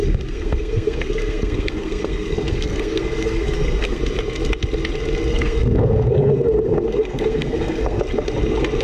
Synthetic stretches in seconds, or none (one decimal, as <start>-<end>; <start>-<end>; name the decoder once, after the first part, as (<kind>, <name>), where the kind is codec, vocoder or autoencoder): 0.0-4.0 (codec, SNAC); 5.3-8.0